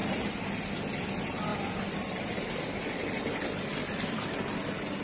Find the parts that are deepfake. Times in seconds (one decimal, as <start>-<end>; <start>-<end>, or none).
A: 0.0-1.1; 1.5-4.5